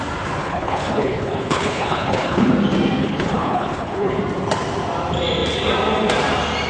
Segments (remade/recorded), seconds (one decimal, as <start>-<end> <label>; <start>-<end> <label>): 0.0-0.4 recorded; 0.4-2.5 remade; 2.5-3.0 recorded; 3.0-4.2 remade; 4.2-6.7 recorded